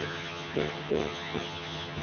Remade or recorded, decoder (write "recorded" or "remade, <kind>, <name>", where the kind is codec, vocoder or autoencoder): remade, vocoder, HiFi-GAN